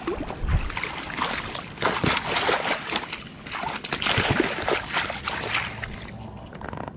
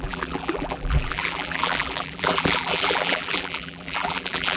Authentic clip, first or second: first